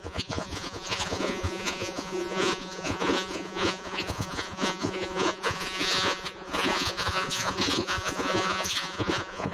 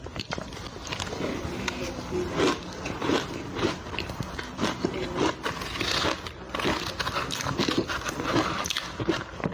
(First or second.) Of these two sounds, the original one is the second